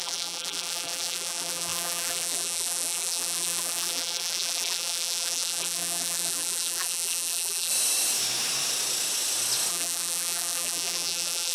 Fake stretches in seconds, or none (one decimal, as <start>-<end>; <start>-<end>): 0.0-7.7; 9.7-11.5